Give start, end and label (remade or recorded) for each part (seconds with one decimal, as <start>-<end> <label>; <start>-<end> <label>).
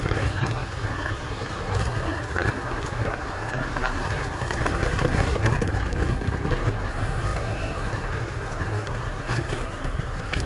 0.0-10.5 remade